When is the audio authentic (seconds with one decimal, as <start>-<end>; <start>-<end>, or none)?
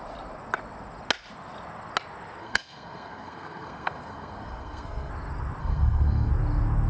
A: 0.0-2.4; 5.1-5.6; 6.3-6.9